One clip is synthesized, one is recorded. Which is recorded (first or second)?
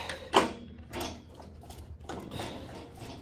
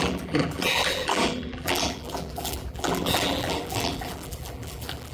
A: first